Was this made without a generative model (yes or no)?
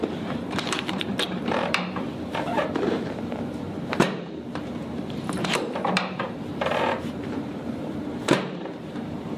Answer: no